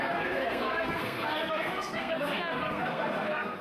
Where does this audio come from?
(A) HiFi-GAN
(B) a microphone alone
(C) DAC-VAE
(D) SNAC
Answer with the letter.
D